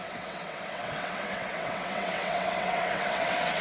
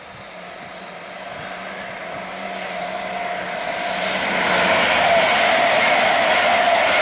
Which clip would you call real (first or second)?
second